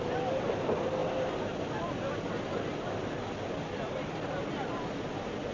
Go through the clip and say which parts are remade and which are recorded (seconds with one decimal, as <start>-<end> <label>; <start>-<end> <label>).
0.0-5.5 recorded